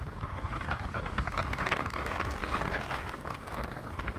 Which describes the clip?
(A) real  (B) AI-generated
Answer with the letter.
B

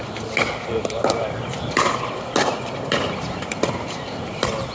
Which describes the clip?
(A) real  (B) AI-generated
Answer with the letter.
A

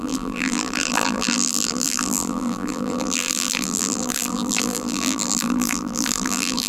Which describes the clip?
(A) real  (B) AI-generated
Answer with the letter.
B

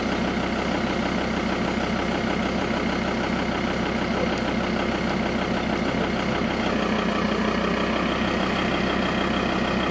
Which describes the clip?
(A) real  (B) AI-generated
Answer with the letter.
A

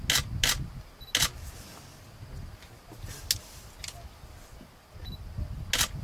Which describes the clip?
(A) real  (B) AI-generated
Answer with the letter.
A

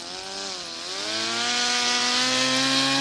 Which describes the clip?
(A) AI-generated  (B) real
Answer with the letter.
B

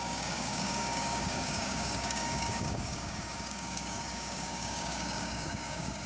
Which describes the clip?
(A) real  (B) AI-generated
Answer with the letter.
B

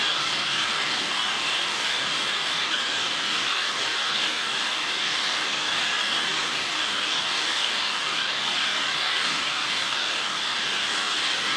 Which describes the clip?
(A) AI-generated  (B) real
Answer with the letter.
A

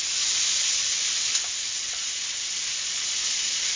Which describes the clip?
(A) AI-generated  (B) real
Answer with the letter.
A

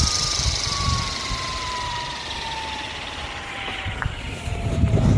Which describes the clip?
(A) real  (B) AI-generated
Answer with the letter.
B